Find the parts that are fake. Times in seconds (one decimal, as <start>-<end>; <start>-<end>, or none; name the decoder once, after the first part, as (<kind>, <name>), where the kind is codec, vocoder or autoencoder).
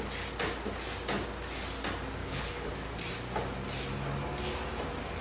2.2-2.7 (codec, HILCodec)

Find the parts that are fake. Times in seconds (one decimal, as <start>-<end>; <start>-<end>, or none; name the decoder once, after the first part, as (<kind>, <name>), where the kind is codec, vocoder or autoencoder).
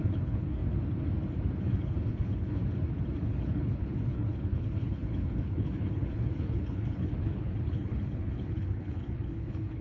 0.0-0.6 (codec, HILCodec); 1.6-2.6; 3.2-9.8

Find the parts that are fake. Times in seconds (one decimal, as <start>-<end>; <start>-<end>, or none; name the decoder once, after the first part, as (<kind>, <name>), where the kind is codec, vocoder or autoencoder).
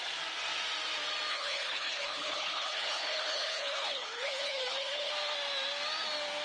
1.3-5.1 (codec, HILCodec)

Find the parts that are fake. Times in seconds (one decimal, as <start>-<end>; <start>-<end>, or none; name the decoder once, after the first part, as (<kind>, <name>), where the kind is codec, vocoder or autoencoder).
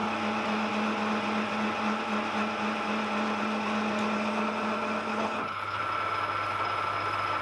5.1-5.8 (codec, HILCodec)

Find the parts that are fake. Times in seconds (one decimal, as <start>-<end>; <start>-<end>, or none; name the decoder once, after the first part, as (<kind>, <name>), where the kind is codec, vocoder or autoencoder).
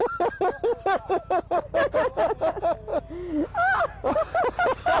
none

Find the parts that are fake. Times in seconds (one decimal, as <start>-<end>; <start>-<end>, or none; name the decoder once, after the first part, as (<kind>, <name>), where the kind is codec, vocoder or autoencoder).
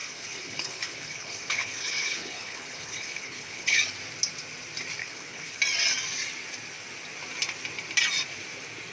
0.0-3.8 (codec, HILCodec); 5.0-5.6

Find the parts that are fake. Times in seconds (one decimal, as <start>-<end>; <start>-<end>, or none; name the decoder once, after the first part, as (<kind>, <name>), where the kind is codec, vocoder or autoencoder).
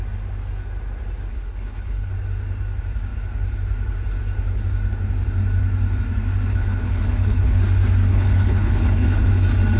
1.3-2.1 (codec, HILCodec); 6.5-7.6; 8.1-9.3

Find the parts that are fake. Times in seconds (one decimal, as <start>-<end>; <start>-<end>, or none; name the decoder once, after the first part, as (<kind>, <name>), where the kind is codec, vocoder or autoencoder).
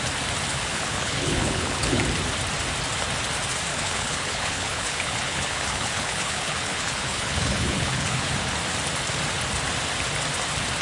0.5-2.0 (codec, HILCodec); 3.7-8.3